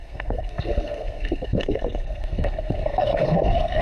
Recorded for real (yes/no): no